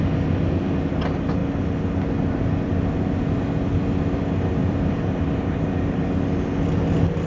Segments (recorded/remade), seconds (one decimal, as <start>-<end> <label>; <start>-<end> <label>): 0.0-4.6 recorded; 4.6-6.0 remade; 6.0-7.3 recorded